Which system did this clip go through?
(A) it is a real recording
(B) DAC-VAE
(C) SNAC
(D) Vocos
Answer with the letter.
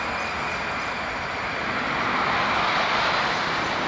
A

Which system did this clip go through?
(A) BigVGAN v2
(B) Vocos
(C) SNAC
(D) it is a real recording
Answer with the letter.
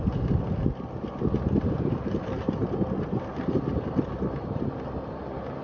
D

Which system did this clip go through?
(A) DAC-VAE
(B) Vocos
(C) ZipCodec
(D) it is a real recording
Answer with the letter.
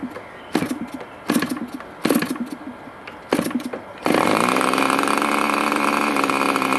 D